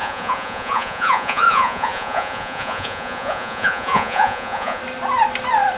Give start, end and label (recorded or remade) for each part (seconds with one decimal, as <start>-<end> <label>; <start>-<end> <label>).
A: 0.0-4.8 remade; 4.8-5.8 recorded